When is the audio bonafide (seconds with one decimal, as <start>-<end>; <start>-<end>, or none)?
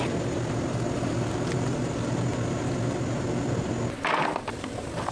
0.0-5.1